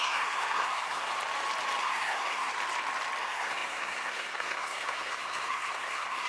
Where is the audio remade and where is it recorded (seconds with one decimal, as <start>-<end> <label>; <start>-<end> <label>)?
0.0-1.1 remade; 1.1-1.8 recorded; 1.8-2.5 remade; 2.5-3.2 recorded; 3.2-6.3 remade